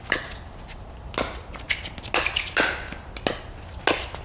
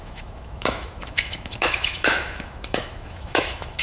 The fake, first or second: second